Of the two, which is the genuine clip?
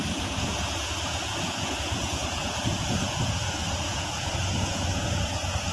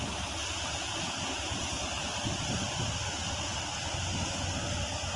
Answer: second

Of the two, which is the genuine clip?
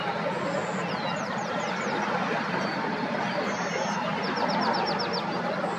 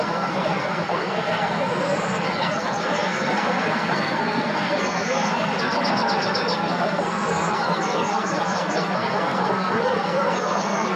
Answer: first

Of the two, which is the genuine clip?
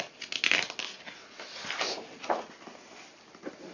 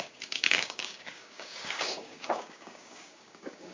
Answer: first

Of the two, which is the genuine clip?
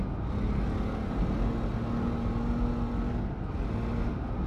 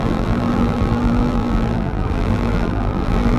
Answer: first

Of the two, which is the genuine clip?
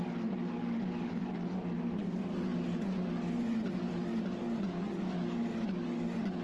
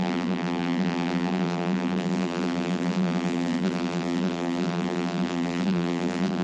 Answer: first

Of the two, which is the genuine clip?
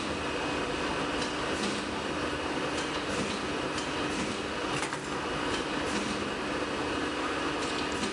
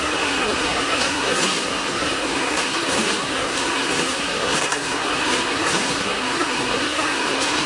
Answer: first